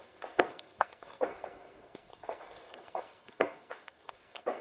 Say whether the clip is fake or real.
fake